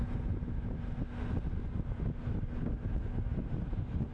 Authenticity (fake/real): real